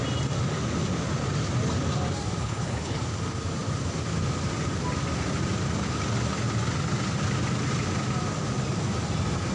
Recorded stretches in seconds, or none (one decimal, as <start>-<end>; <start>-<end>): 0.0-2.4; 3.0-9.5